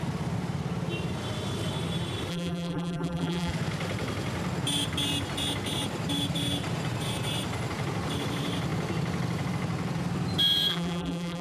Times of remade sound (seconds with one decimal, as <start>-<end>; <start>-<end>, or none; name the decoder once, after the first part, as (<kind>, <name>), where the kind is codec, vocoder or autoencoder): 2.3-3.5 (vocoder, BigVGAN v2); 10.7-11.4